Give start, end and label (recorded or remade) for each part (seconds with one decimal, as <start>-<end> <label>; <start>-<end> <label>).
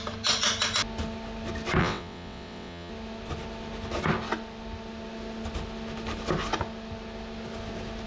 0.0-1.8 recorded; 1.8-2.9 remade; 2.9-8.1 recorded